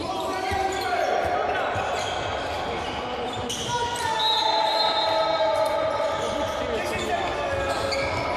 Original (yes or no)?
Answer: yes